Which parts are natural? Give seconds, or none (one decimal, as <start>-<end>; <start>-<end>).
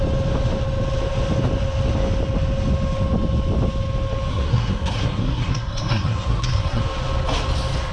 0.0-4.3; 6.8-7.9